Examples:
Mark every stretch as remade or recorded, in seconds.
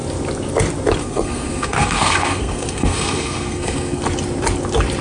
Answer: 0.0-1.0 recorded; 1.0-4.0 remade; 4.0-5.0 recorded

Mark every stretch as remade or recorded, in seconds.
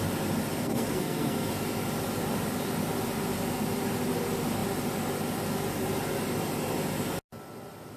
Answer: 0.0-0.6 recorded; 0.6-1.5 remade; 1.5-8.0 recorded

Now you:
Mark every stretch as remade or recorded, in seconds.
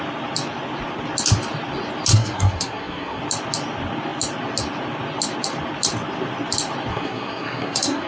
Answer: 0.0-2.1 recorded; 2.1-3.2 remade; 3.2-6.9 recorded; 6.9-8.1 remade